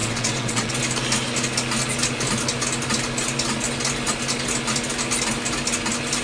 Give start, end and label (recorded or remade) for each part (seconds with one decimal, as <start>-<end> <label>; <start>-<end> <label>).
0.0-0.7 remade; 0.7-6.2 recorded